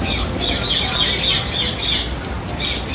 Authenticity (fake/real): real